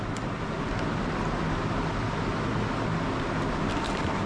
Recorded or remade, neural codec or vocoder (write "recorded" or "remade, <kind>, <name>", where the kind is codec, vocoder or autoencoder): recorded